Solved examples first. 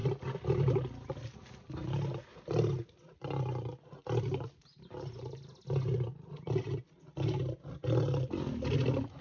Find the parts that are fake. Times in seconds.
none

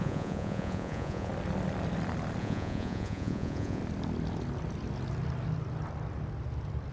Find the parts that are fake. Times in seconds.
0.0-1.3 (vocoder, Vocos); 2.4-3.8

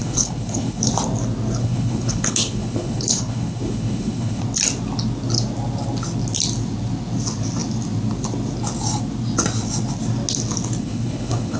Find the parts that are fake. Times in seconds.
0.0-0.9 (codec, HILCodec); 1.6-4.4; 10.8-11.6